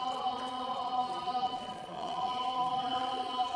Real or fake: fake